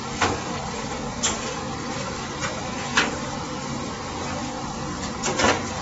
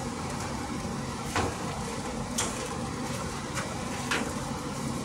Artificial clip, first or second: second